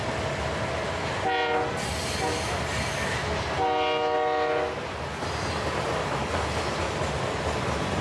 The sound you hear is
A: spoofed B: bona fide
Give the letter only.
B